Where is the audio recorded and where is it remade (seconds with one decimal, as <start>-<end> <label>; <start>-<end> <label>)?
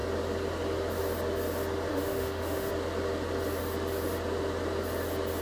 0.0-1.9 recorded; 1.9-2.7 remade; 2.7-5.4 recorded